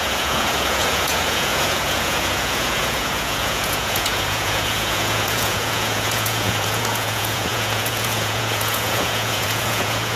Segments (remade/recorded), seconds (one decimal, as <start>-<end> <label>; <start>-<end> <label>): 0.0-10.2 remade